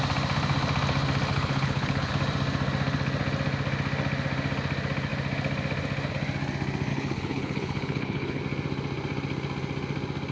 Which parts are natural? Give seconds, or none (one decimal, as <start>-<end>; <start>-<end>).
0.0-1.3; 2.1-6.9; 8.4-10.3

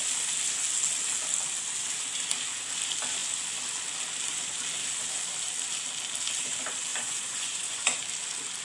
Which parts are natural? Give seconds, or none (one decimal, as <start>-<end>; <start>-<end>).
0.0-6.9; 8.0-8.6

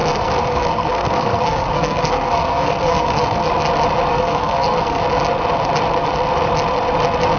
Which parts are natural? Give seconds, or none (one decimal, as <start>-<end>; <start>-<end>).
3.5-4.1; 5.0-7.4